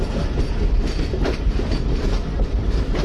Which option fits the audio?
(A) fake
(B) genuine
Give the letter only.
B